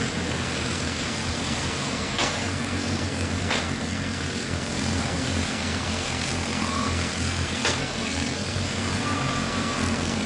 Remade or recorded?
remade